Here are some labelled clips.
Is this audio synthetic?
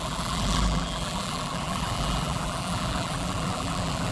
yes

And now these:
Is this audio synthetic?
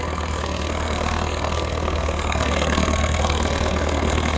yes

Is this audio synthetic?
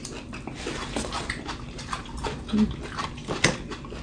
no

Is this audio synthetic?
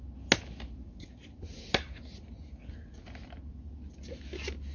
no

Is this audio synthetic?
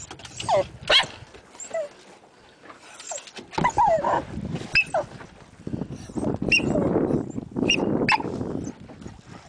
no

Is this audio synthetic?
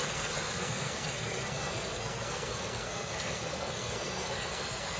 yes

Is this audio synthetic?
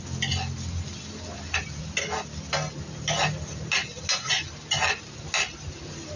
no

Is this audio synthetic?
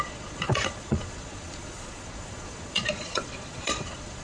yes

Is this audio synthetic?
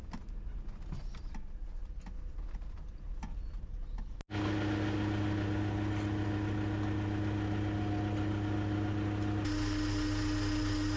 no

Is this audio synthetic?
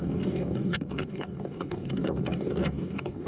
yes